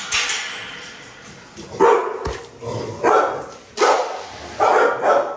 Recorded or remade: recorded